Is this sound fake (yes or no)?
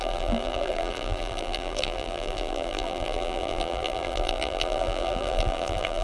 yes